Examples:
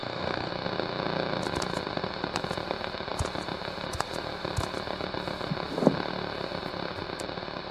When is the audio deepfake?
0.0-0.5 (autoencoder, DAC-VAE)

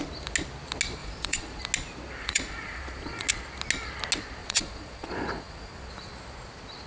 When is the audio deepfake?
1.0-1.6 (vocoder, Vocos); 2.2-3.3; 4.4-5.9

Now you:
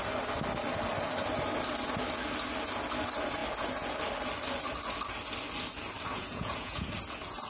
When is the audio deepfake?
6.1-6.9 (vocoder, Vocos)